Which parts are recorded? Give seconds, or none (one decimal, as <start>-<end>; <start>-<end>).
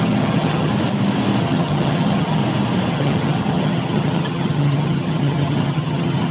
0.7-1.4; 2.4-2.9